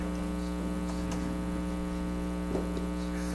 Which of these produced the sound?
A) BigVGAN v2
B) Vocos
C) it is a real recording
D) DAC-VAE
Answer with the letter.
C